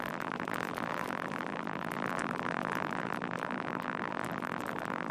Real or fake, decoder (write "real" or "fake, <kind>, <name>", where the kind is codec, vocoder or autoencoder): fake, vocoder, BigVGAN v2